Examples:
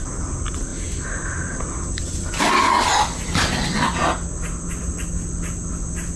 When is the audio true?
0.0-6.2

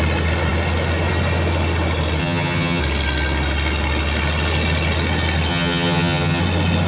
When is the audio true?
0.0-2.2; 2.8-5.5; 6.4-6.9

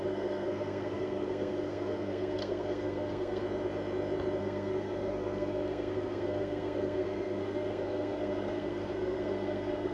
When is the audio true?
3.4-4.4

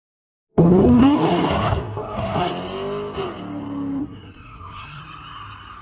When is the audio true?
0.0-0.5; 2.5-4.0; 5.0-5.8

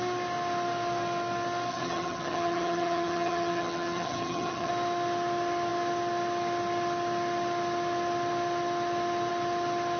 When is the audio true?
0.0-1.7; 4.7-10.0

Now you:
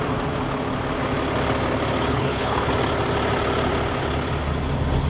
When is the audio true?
0.0-2.1; 2.7-5.1

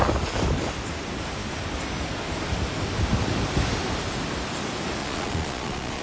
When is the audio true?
0.0-5.0